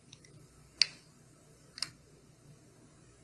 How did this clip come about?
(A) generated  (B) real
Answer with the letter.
B